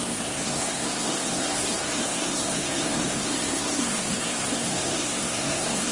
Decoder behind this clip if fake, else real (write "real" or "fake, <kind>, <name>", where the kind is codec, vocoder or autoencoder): fake, codec, SNAC